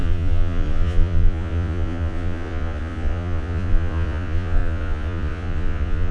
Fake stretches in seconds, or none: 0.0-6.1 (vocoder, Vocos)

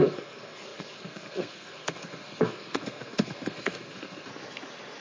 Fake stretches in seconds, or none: 0.0-4.3 (codec, SNAC)

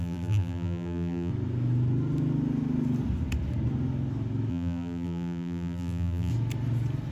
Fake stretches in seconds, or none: 0.0-1.3 (vocoder, BigVGAN v2); 4.5-6.3

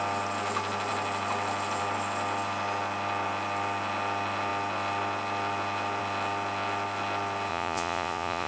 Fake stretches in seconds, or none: 7.5-8.5 (vocoder, Vocos)

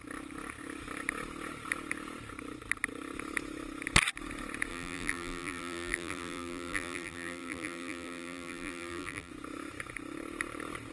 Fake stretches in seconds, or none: 4.7-9.3 (vocoder, BigVGAN v2)

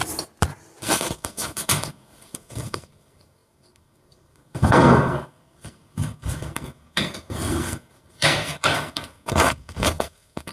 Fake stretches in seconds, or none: 0.8-10.5 (codec, SNAC)

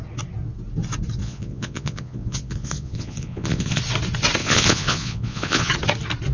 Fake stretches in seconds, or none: 1.2-3.8 (vocoder, Vocos); 4.4-5.7